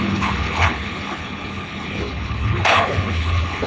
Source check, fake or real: fake